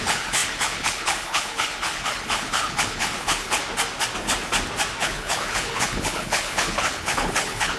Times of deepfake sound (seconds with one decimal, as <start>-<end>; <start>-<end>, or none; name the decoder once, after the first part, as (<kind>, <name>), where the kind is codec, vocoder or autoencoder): 0.0-3.6 (codec, HILCodec); 5.0-7.8

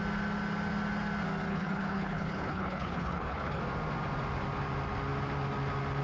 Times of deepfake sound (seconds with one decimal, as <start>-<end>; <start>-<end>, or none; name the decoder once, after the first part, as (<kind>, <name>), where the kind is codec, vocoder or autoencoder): 1.5-3.6 (codec, HILCodec)

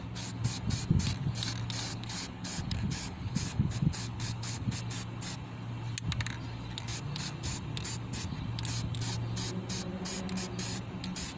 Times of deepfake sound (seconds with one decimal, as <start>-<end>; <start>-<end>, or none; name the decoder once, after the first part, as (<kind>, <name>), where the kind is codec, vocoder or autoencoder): 1.9-4.8 (codec, HILCodec)

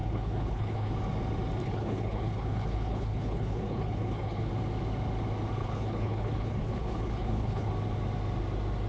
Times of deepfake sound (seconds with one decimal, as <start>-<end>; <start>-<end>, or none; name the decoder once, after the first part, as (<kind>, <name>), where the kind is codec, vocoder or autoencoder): 0.0-0.9 (codec, HILCodec); 1.6-4.5; 5.6-7.7

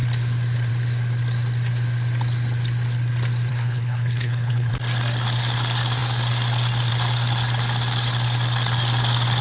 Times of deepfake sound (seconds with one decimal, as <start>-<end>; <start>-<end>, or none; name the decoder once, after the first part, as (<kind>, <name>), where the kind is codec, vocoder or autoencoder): 3.5-4.7 (codec, HILCodec)

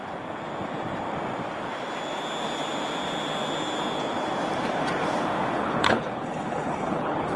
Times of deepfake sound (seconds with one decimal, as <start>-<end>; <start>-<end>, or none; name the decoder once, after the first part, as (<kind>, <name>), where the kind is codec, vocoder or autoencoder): 5.5-7.4 (codec, HILCodec)

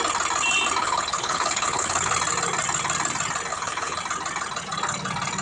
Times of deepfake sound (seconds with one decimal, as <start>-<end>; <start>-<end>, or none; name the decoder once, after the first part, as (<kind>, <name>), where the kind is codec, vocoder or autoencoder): 0.8-2.1 (codec, HILCodec); 3.5-4.0